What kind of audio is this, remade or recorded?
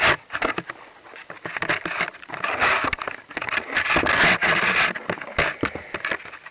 recorded